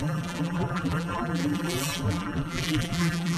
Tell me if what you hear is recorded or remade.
remade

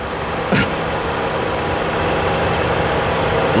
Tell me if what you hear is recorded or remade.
recorded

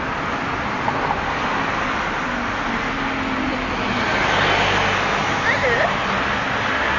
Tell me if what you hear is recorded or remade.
recorded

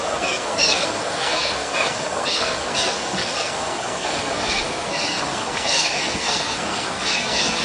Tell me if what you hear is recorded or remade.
remade